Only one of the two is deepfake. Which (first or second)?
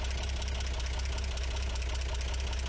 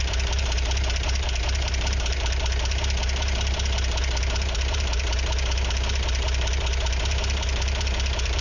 second